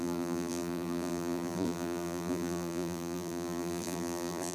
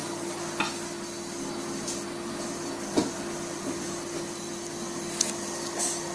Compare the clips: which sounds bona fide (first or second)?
second